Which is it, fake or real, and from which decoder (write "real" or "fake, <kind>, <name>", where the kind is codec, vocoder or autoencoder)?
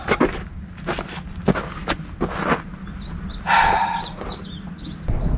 real